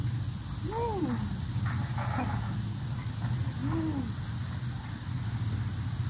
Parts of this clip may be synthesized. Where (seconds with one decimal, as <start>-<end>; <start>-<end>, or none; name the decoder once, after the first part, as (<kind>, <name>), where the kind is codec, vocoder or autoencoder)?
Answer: none